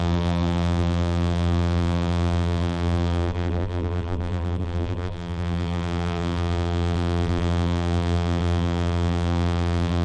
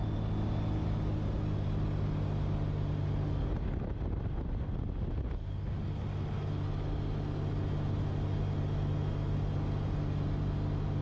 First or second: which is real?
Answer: second